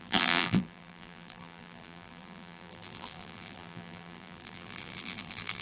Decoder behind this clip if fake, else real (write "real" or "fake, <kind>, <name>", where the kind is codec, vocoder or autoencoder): fake, vocoder, BigVGAN v2